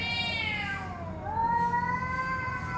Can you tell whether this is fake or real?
real